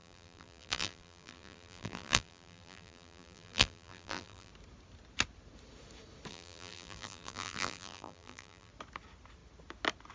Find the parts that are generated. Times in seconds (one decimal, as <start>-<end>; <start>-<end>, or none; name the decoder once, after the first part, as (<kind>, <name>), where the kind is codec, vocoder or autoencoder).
0.0-4.5 (vocoder, BigVGAN v2); 6.3-8.7